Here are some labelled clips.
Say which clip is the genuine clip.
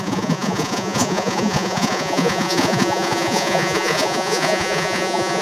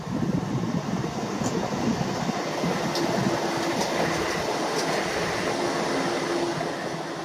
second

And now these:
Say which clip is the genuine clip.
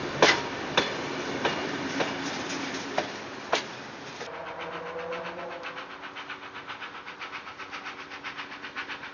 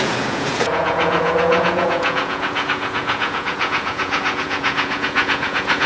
first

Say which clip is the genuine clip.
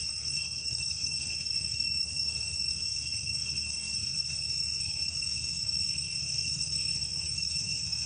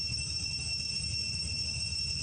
second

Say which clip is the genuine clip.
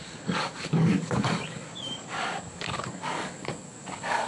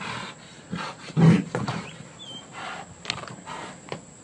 second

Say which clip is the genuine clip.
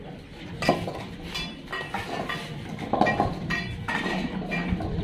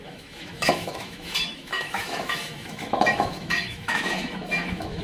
first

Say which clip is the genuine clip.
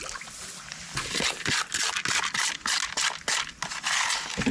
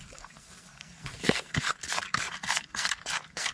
first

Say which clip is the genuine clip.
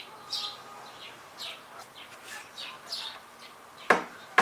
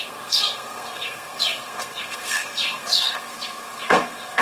first